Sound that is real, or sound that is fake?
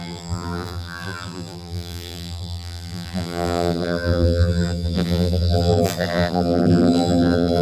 fake